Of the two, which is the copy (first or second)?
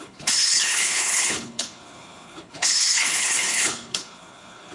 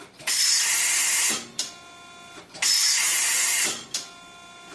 first